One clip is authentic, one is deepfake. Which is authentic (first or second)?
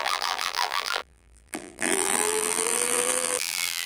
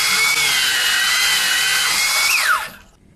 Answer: second